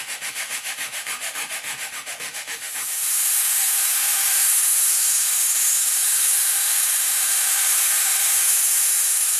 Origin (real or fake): fake